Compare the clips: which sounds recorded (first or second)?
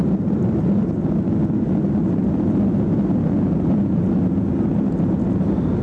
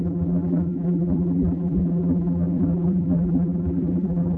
first